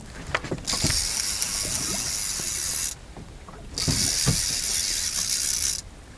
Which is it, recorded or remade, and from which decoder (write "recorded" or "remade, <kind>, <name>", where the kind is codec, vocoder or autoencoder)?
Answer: recorded